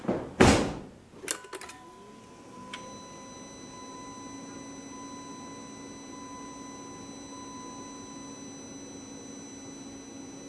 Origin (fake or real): real